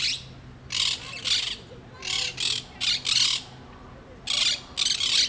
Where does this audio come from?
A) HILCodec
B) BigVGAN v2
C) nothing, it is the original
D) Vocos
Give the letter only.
C